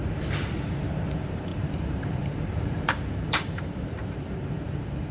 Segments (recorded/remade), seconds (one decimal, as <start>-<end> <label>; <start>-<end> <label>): 0.0-0.7 recorded; 0.7-5.1 remade